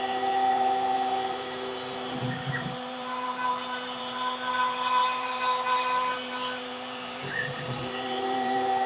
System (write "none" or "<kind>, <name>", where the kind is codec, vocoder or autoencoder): vocoder, BigVGAN v2